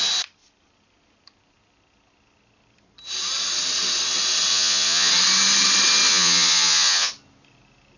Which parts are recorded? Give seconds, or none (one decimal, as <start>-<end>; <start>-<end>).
0.0-4.5; 5.1-6.1; 7.1-8.0